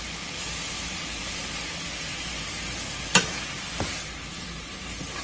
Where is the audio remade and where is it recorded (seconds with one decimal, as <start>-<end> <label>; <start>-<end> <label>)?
0.0-5.2 recorded